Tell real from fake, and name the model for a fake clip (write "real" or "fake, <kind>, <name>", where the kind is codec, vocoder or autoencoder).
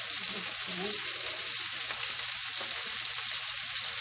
real